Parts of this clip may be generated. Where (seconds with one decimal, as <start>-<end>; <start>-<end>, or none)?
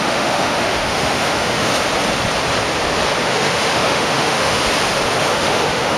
0.0-1.7; 3.2-4.6; 5.2-6.0